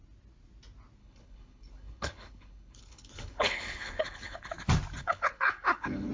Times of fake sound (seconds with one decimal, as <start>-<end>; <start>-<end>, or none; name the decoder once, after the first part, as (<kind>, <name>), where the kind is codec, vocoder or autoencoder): 1.0-4.5 (codec, HILCodec); 5.0-6.1